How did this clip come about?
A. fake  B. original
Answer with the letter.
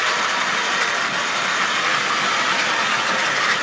B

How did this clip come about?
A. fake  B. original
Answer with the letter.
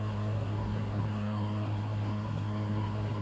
A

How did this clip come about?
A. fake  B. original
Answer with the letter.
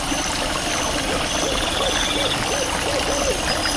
B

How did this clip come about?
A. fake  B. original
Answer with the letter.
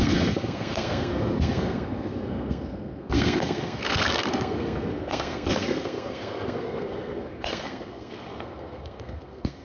A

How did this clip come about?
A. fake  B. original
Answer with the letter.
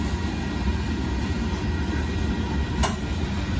B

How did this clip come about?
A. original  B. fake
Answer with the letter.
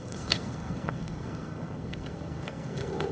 B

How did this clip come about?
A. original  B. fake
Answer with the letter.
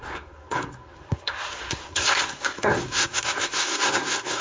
B